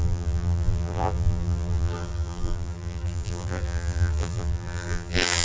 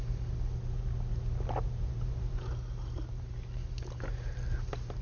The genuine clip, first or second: second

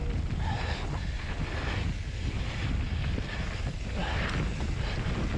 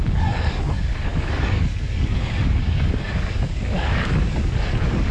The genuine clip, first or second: first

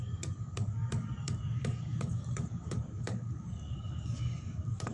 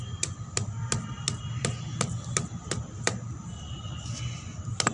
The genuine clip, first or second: second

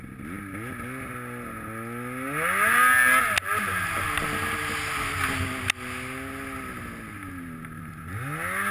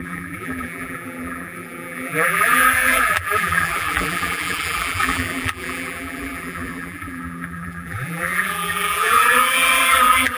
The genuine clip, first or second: first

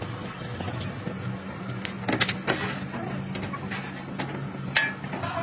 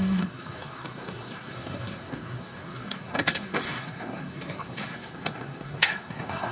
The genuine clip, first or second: first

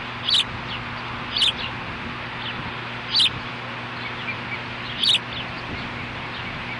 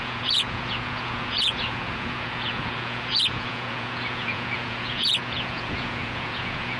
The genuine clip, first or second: first